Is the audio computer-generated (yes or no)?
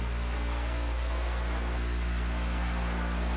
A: yes